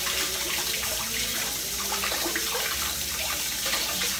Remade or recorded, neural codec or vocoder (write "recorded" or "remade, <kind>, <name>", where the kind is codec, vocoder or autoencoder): remade, vocoder, BigVGAN v2